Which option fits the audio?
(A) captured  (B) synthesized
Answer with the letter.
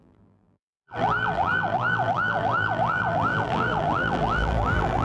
B